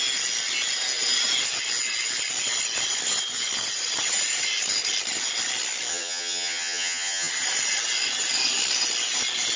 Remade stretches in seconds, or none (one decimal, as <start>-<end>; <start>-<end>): 5.9-7.3